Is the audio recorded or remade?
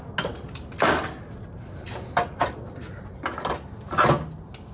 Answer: recorded